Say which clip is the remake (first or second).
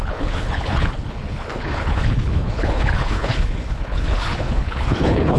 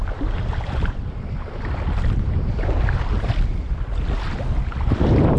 first